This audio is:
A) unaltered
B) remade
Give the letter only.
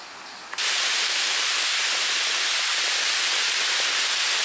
A